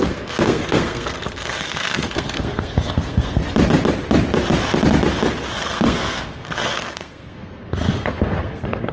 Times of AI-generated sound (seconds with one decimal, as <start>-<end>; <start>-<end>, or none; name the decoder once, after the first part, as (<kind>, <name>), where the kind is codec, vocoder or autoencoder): 0.0-3.4 (codec, SNAC); 5.5-8.9